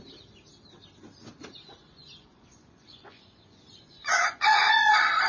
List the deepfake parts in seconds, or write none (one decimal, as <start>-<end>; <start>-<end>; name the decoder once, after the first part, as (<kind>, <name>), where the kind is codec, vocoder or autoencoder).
1.8-5.3 (vocoder, Vocos)

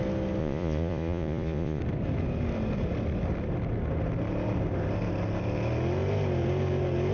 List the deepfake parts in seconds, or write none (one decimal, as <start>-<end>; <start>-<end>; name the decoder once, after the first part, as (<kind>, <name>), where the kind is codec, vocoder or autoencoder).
0.4-1.8 (vocoder, Vocos)

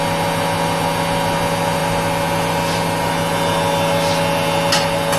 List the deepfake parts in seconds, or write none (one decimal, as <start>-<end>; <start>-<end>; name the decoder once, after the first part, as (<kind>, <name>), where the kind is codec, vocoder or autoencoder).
none